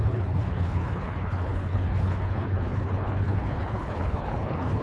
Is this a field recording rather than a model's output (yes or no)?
no